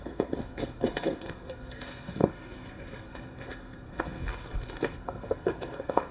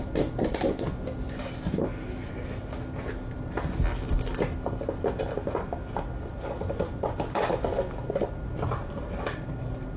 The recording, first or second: second